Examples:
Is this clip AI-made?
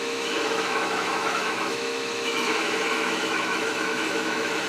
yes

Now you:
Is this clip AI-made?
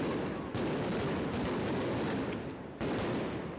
no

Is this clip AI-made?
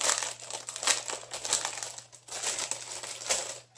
no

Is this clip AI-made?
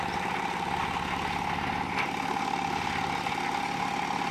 no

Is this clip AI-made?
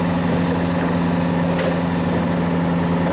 no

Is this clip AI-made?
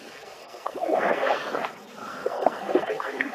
yes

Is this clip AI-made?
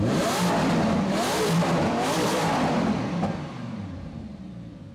yes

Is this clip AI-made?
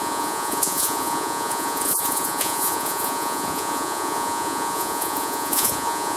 yes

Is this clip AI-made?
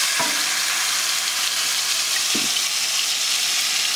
no